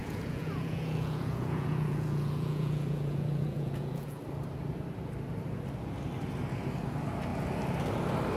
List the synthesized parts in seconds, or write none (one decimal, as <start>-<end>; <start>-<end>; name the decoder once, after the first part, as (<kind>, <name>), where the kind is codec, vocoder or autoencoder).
0.0-4.2 (vocoder, Vocos)